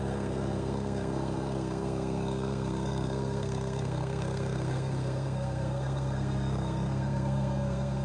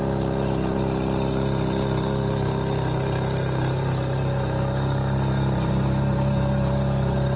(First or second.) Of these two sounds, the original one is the second